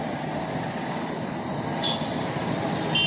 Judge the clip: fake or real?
real